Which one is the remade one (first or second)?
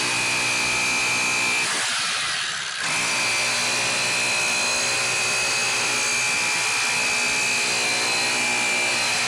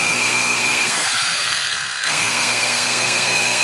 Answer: second